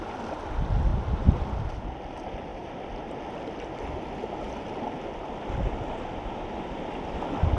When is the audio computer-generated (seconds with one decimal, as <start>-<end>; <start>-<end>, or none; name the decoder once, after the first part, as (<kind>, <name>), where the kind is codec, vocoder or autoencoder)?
none